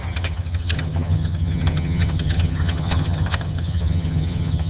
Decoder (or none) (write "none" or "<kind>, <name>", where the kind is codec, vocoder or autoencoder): vocoder, HiFi-GAN